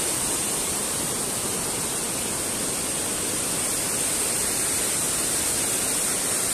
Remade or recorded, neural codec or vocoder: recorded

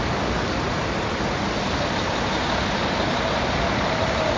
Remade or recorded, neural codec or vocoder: recorded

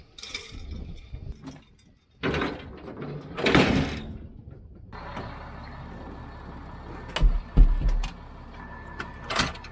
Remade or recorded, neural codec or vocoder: recorded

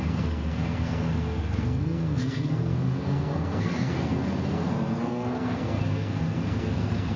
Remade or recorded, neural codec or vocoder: remade, codec, SNAC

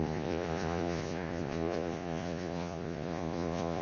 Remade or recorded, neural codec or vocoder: remade, vocoder, Vocos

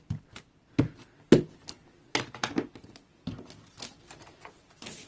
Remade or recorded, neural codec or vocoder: recorded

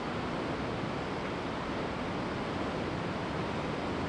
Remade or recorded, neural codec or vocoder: recorded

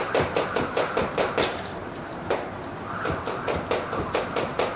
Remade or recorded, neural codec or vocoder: remade, vocoder, BigVGAN v2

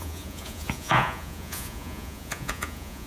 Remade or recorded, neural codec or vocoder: remade, vocoder, Vocos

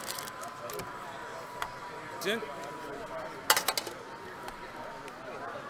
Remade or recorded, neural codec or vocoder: recorded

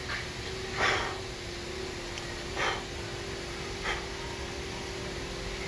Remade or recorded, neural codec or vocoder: recorded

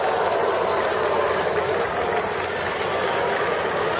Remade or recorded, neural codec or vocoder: recorded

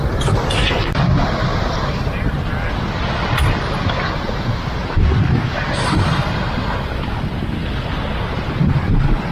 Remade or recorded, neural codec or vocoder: recorded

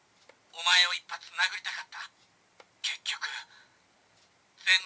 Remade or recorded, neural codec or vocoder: recorded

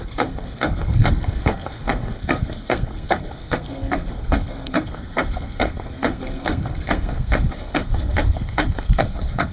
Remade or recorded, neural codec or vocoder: remade, codec, SNAC